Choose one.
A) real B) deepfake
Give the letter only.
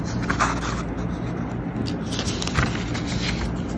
A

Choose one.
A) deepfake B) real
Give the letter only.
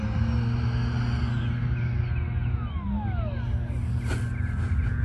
B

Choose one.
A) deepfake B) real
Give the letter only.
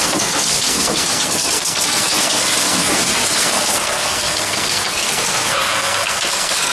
A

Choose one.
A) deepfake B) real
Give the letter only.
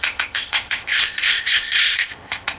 A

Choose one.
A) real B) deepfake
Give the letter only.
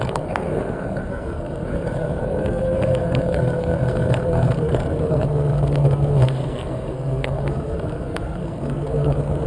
B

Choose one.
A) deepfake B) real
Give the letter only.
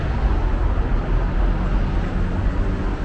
B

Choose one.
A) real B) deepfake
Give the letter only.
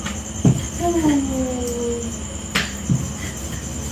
A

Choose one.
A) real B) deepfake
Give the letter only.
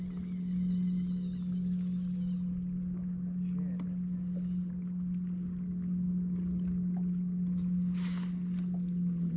A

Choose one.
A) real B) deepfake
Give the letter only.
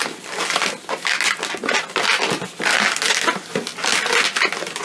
A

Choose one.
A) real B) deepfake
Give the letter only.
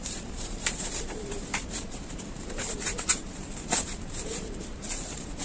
B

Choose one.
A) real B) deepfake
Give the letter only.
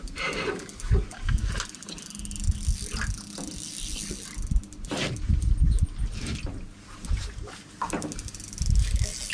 A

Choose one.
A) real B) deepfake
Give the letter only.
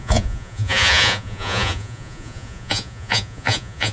B